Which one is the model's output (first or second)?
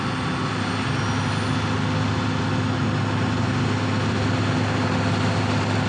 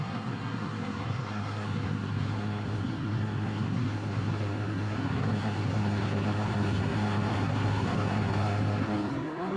second